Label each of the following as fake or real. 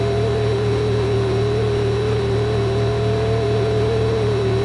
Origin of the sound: real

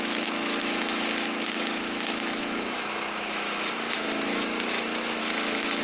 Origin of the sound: fake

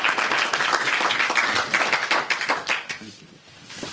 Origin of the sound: real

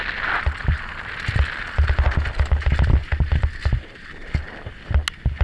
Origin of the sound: real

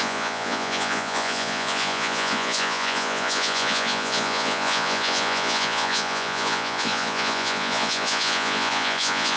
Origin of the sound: fake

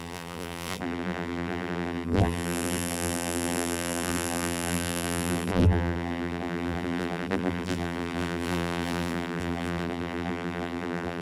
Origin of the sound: fake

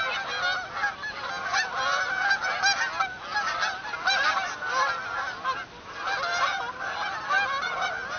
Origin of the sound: real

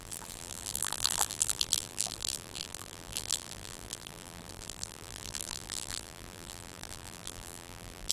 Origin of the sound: fake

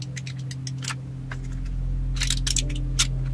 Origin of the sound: real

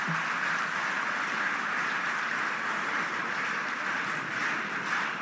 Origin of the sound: real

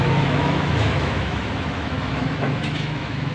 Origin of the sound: fake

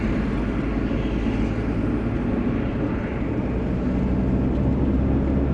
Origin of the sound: real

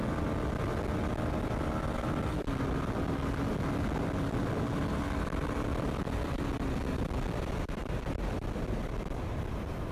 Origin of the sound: real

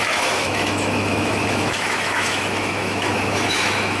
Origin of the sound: fake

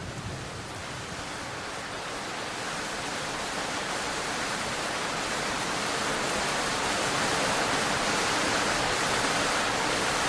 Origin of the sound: fake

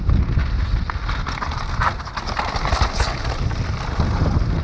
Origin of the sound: real